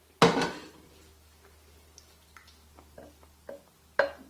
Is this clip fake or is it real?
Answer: real